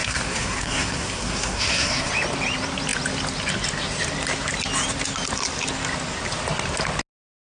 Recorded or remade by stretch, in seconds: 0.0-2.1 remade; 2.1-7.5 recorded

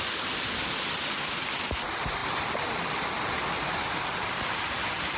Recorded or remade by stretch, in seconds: 0.0-5.2 recorded

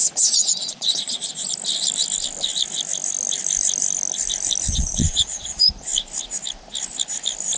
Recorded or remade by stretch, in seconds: 0.0-1.4 remade; 1.4-4.7 recorded; 4.7-5.9 remade; 5.9-7.6 recorded

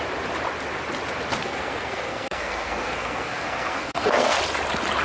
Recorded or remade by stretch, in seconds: 0.0-1.4 recorded; 1.4-4.4 remade; 4.4-5.0 recorded

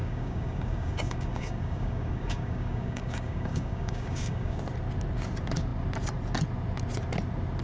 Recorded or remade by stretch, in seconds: 0.0-4.6 remade; 4.6-7.6 recorded

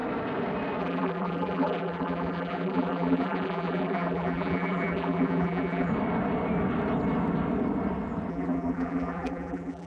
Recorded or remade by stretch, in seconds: 0.0-0.8 recorded; 0.8-5.9 remade; 5.9-8.3 recorded; 8.3-9.9 remade